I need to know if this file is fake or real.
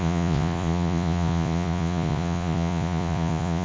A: fake